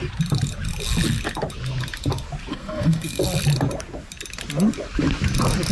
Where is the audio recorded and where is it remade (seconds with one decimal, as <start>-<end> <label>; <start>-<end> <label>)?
0.0-2.5 recorded; 2.5-3.2 remade; 3.2-5.7 recorded